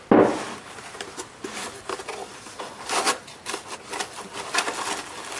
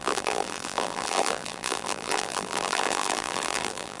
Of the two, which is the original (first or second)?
first